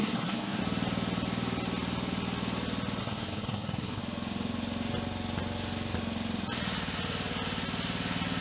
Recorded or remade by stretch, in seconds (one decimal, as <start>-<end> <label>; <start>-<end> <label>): 0.0-0.6 remade; 0.6-3.0 recorded; 3.0-4.0 remade; 4.0-8.4 recorded